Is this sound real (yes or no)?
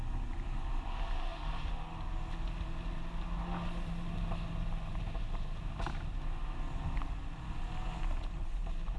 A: yes